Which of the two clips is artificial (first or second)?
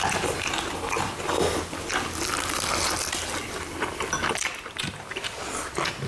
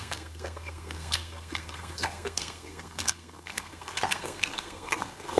second